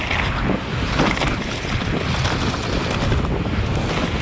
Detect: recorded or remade recorded